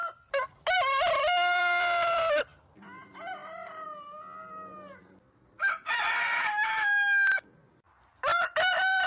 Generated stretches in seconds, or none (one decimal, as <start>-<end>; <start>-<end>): 0.0-3.4; 5.0-6.7; 7.3-9.1